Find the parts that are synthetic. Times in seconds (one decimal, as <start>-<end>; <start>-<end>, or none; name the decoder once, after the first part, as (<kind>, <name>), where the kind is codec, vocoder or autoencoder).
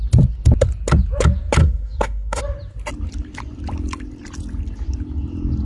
1.6-2.4 (codec, SNAC)